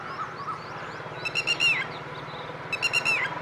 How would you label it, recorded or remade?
recorded